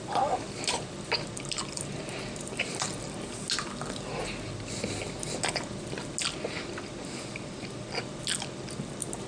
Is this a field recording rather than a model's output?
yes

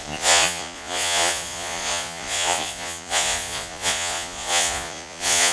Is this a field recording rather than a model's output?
no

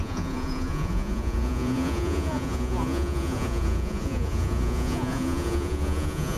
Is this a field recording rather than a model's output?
no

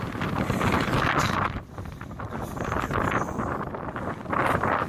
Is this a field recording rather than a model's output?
yes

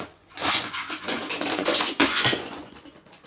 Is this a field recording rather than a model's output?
no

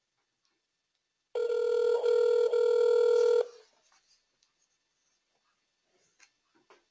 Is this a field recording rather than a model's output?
yes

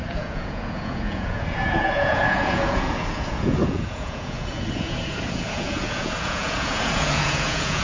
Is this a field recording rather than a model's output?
no